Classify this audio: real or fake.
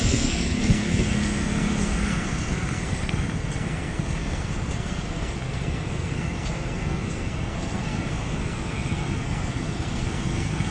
fake